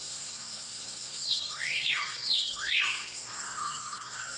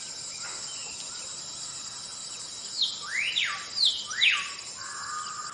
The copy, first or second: first